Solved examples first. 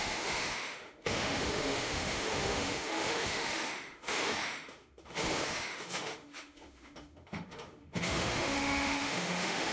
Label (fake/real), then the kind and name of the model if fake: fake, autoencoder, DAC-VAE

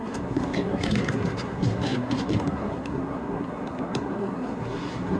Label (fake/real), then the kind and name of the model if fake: fake, codec, SNAC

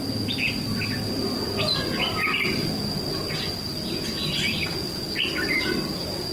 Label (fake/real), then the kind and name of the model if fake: real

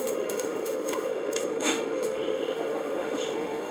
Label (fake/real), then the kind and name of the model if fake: fake, autoencoder, DAC-VAE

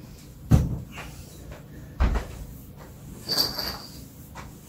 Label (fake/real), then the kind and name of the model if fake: real